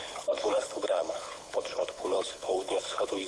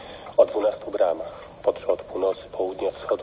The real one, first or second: second